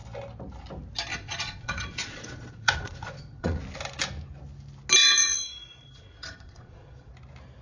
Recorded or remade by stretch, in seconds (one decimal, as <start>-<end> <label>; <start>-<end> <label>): 0.0-1.1 recorded; 1.1-3.6 remade; 3.6-5.2 recorded; 5.2-7.1 remade; 7.1-7.6 recorded

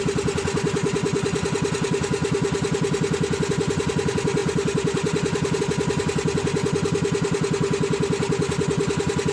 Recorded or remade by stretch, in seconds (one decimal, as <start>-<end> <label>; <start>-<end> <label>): 0.0-4.4 recorded; 4.4-5.6 remade; 5.6-9.3 recorded

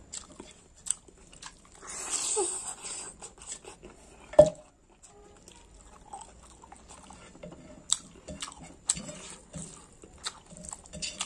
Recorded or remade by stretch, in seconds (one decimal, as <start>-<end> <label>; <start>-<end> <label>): 0.0-2.5 recorded; 2.5-3.2 remade; 3.2-4.5 recorded; 4.5-5.1 remade; 5.1-11.3 recorded

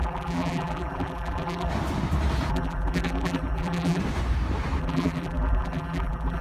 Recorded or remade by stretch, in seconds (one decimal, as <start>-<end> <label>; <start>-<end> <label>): 0.0-1.7 remade; 1.7-2.5 recorded; 2.5-4.0 remade; 4.0-4.8 recorded; 4.8-6.4 remade

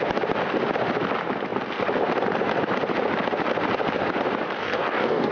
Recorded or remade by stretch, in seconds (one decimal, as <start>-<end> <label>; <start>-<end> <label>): 0.0-4.6 recorded; 4.6-5.3 remade